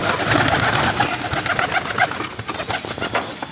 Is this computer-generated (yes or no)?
no